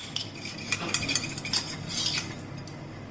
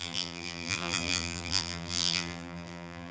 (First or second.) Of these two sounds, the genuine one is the first